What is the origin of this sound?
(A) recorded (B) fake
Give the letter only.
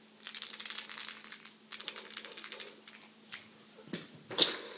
A